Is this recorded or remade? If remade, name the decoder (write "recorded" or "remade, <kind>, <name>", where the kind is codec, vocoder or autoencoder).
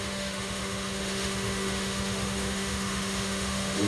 remade, autoencoder, DAC-VAE